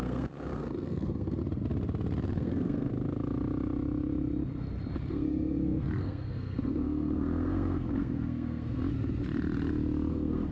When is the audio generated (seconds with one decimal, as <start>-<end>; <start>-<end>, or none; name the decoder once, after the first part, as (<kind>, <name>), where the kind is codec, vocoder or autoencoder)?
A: 0.0-1.4 (codec, SNAC); 2.3-2.9; 5.1-8.8; 10.1-10.5